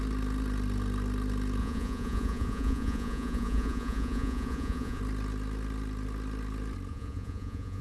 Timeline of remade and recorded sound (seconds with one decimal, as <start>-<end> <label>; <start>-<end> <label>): 0.0-1.6 recorded; 1.6-5.0 remade; 5.0-6.9 recorded; 6.9-7.8 remade